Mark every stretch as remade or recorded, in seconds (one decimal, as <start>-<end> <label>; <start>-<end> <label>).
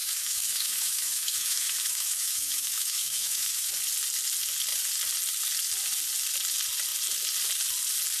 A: 0.0-3.7 remade; 3.7-8.2 recorded